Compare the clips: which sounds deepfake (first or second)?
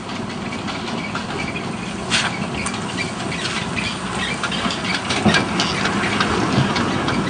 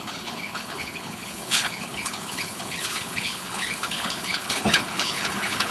second